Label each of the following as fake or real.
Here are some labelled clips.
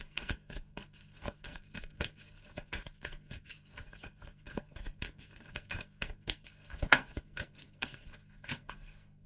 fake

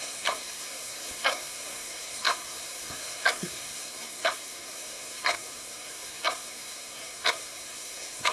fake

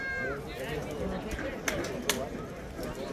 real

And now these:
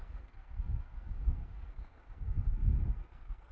fake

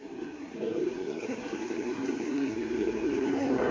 fake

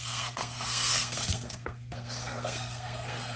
fake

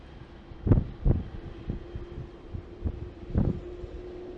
real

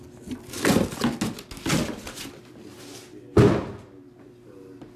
real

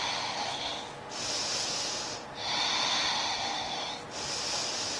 real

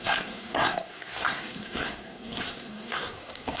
fake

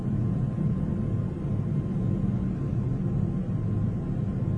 real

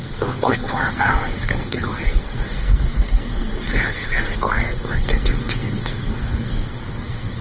fake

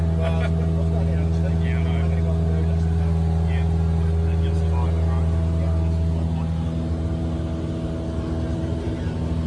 real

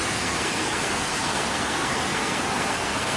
fake